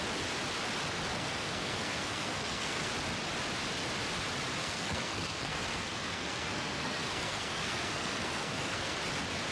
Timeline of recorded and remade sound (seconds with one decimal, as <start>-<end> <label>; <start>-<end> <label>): 0.0-1.1 recorded; 1.1-2.9 remade; 2.9-4.6 recorded; 4.6-9.0 remade; 9.0-9.5 recorded

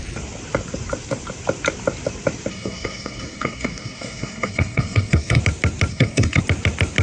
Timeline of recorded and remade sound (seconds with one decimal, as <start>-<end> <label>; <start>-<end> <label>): 0.0-2.5 recorded; 2.5-5.4 remade; 5.4-5.9 recorded; 5.9-6.4 remade; 6.4-7.0 recorded

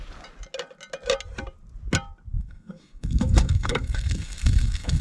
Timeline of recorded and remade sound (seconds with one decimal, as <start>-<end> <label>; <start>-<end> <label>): 0.0-2.3 recorded; 2.3-5.0 remade